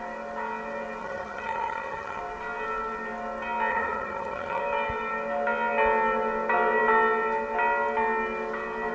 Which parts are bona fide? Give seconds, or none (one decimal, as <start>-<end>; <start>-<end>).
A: 0.0-1.0; 2.2-3.7; 4.6-8.9